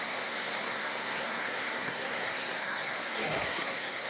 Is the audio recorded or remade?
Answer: remade